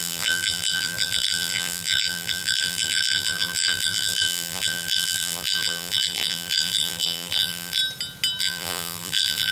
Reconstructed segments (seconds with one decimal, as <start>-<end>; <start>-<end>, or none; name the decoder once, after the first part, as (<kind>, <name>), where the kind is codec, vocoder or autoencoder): 0.0-7.8 (vocoder, BigVGAN v2); 8.4-9.5